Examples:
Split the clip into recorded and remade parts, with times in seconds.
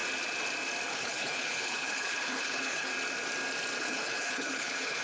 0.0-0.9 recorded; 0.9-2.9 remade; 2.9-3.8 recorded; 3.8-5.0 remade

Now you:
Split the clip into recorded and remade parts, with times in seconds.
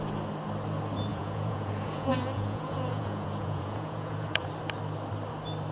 0.0-1.1 recorded; 1.1-4.5 remade; 4.5-5.7 recorded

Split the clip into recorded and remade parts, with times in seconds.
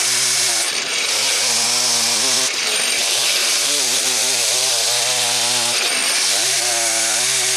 0.0-3.0 recorded; 3.0-4.7 remade; 4.7-6.0 recorded; 6.0-6.7 remade; 6.7-7.6 recorded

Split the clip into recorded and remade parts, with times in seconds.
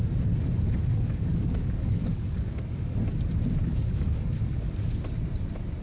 0.0-0.9 recorded; 0.9-3.0 remade; 3.0-3.7 recorded; 3.7-4.7 remade; 4.7-5.8 recorded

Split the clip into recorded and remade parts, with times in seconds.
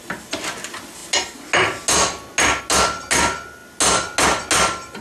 0.0-5.0 recorded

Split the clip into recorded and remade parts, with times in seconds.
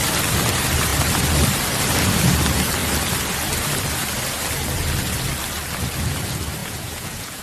0.0-6.6 recorded; 6.6-7.4 remade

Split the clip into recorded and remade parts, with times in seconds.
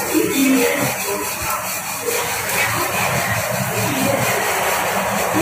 0.0-0.4 remade; 0.4-1.9 recorded; 1.9-3.4 remade; 3.4-4.0 recorded; 4.0-5.4 remade